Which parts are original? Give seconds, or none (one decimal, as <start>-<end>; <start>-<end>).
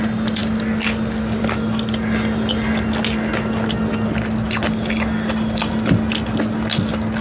0.0-7.2